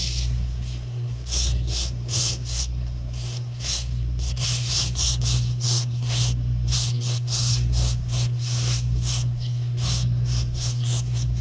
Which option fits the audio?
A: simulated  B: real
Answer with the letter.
A